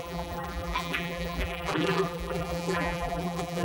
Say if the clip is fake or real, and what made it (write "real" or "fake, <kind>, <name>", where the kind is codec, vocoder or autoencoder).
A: fake, vocoder, BigVGAN v2